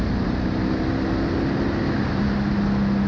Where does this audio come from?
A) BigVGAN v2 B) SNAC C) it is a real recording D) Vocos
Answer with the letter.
C